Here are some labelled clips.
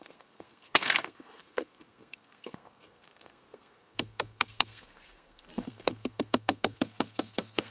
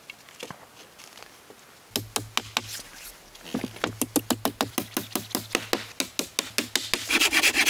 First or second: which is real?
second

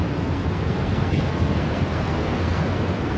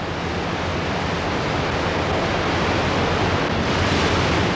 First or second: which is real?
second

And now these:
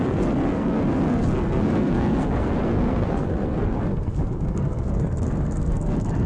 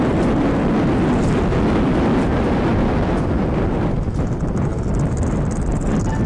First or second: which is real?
second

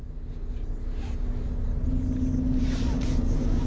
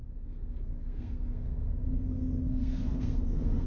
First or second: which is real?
first